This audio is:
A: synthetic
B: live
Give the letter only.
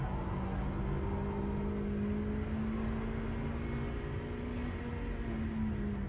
B